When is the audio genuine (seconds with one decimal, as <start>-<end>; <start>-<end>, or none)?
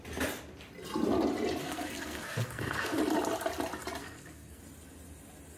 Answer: 0.0-1.6; 3.0-4.0; 4.6-5.6